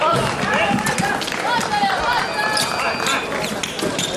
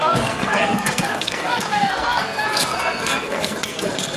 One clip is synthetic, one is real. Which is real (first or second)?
first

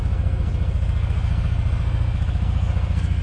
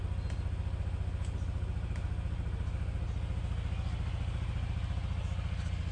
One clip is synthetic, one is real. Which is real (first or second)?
second